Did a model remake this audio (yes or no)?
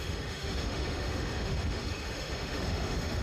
yes